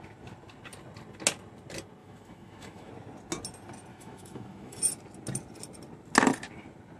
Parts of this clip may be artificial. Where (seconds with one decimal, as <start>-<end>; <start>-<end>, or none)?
2.0-2.9; 3.9-4.8